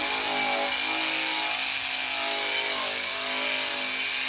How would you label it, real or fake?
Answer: real